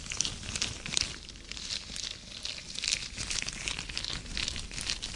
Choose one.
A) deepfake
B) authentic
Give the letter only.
B